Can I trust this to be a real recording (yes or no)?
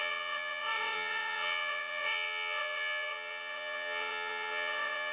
no